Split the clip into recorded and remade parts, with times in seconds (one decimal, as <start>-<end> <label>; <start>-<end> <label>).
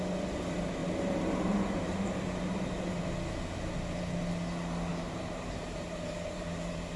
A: 0.0-0.8 recorded; 0.8-3.0 remade; 3.0-4.9 recorded; 4.9-7.0 remade